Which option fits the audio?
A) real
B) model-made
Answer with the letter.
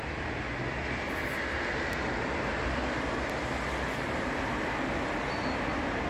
A